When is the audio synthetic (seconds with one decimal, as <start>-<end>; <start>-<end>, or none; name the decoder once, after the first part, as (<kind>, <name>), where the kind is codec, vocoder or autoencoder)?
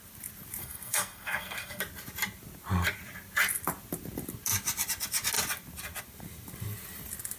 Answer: 0.6-1.8 (codec, SNAC)